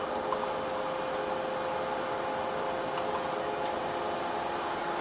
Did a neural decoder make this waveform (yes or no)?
no